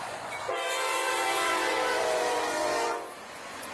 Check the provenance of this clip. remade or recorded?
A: remade